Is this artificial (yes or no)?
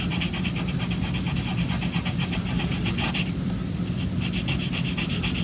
no